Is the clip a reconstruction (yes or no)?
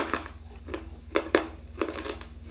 yes